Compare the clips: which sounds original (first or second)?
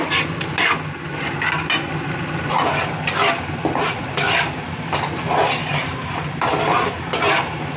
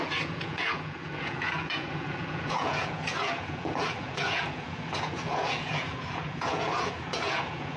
first